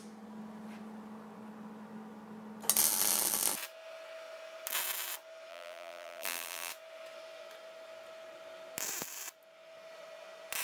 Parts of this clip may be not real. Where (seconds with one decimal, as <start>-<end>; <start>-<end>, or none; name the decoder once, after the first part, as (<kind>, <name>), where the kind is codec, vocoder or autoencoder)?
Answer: 5.5-6.7 (vocoder, BigVGAN v2)

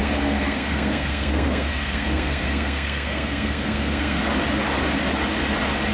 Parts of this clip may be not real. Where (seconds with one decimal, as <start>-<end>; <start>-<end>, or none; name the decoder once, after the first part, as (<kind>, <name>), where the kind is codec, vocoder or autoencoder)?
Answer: 0.0-4.2 (codec, SNAC)

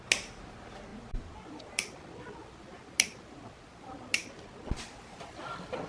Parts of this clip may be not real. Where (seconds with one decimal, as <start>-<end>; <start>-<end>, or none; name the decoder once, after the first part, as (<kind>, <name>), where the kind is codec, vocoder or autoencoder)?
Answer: none

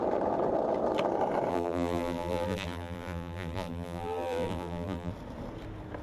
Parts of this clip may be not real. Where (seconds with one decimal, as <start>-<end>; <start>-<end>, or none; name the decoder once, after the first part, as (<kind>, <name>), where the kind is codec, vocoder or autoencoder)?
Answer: 1.5-5.1 (vocoder, BigVGAN v2)

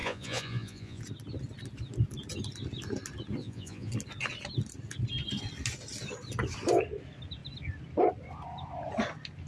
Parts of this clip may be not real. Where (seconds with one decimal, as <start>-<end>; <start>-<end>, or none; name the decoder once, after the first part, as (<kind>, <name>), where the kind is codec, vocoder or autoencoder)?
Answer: 0.0-1.0 (vocoder, Vocos); 3.4-3.9

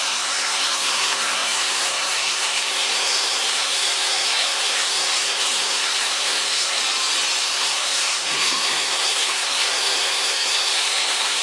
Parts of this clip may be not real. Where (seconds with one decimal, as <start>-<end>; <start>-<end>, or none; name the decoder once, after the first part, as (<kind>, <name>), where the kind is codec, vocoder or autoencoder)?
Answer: 0.0-6.8 (codec, SNAC); 7.4-11.4

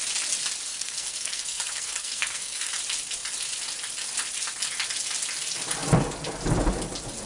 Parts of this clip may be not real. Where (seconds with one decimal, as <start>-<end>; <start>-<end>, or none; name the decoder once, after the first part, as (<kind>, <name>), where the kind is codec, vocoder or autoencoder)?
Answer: 0.7-2.7 (codec, SNAC)